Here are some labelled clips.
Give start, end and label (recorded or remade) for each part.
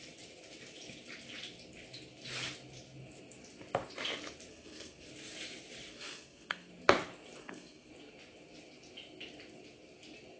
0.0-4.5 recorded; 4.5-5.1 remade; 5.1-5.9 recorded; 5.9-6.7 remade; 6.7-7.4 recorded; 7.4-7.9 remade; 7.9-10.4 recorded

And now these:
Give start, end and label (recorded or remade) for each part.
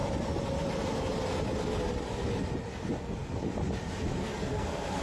0.0-4.4 recorded; 4.4-5.0 remade